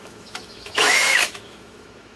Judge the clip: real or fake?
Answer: fake